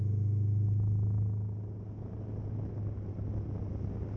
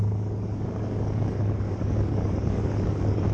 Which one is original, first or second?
first